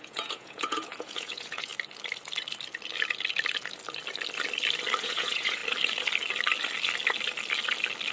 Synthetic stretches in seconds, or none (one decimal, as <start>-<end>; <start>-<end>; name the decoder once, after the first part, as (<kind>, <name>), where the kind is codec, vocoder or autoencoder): 0.0-1.7 (vocoder, Vocos); 5.0-5.6